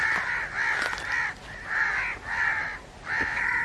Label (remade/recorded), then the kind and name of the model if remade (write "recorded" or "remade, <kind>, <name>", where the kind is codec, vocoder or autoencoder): recorded